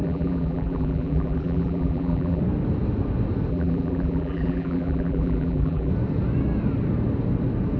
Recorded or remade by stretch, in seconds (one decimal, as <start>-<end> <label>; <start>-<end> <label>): 0.0-2.4 remade; 2.4-3.5 recorded; 3.5-5.9 remade; 5.9-7.8 recorded